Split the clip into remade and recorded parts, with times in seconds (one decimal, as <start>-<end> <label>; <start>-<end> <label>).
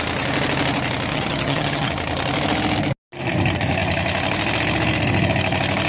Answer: 0.0-1.1 recorded; 1.1-1.9 remade; 1.9-5.9 recorded